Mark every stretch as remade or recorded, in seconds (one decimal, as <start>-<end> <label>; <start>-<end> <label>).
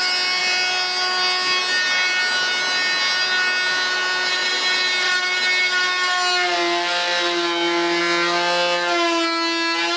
0.0-10.0 recorded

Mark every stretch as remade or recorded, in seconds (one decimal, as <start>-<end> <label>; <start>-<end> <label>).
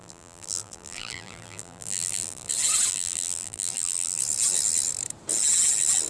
0.0-2.5 remade; 2.5-2.9 recorded; 2.9-4.2 remade; 4.2-6.1 recorded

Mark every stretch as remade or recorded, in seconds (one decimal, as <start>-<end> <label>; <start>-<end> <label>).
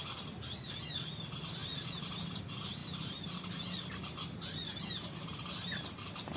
0.0-1.6 recorded; 1.6-2.3 remade; 2.3-2.8 recorded; 2.8-6.4 remade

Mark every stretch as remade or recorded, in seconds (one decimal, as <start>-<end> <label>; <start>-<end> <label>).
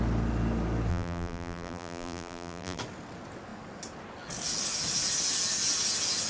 0.0-0.9 recorded; 0.9-2.8 remade; 2.8-6.3 recorded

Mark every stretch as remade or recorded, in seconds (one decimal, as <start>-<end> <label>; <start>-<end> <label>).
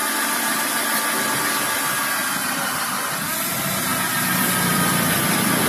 0.0-1.4 remade; 1.4-5.7 recorded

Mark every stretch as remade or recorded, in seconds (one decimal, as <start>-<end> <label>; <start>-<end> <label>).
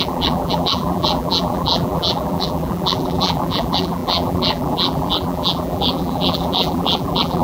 0.0-7.4 remade